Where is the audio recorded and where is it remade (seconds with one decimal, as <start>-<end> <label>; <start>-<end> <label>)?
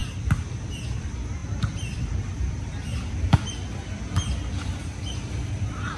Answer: 0.0-6.0 recorded